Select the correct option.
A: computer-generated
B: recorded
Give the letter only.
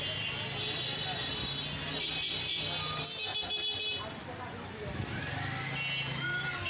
B